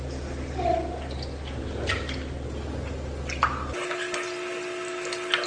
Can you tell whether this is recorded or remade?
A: recorded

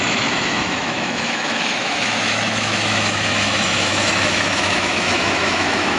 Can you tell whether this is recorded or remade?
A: remade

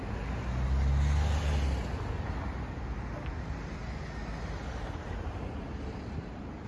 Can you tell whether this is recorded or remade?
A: recorded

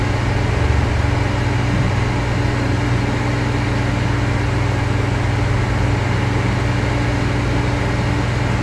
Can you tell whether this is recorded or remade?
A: recorded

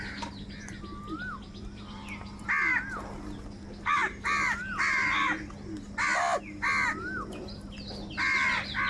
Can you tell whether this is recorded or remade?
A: recorded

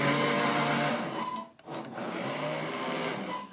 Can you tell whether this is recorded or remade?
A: recorded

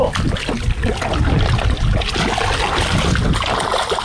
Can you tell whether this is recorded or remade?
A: recorded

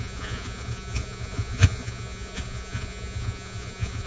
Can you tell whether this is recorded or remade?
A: remade